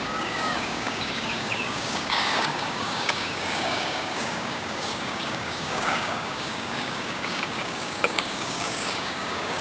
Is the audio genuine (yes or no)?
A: no